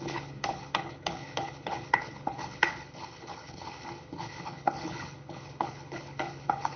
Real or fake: fake